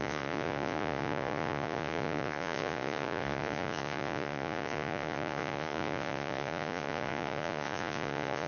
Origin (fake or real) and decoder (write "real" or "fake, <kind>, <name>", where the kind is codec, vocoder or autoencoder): fake, vocoder, Vocos